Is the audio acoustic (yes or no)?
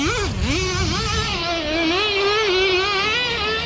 yes